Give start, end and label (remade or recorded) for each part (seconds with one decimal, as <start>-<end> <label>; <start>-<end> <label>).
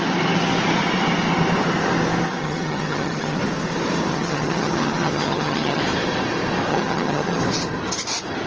0.0-2.4 recorded; 2.4-3.4 remade; 3.4-4.1 recorded; 4.1-5.8 remade; 5.8-6.7 recorded; 6.7-7.4 remade; 7.4-8.5 recorded